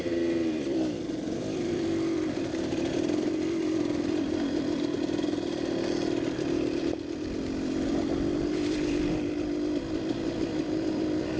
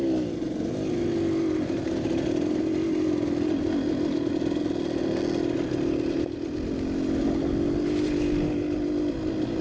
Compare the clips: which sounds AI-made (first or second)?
first